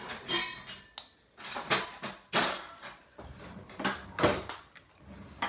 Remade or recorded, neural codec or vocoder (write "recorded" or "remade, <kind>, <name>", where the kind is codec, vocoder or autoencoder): recorded